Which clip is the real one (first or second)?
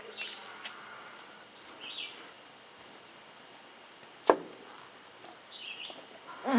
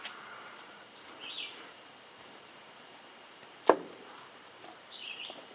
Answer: first